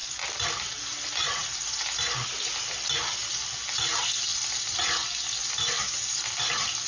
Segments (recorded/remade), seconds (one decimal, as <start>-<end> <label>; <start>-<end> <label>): 0.0-6.9 recorded